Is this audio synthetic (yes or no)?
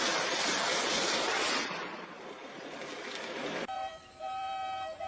yes